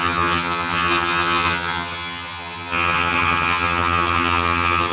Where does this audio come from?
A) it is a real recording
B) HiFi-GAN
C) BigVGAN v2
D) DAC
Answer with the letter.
B